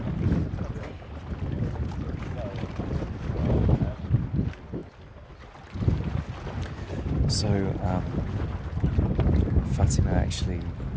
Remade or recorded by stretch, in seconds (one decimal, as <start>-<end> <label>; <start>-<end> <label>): 0.0-11.0 recorded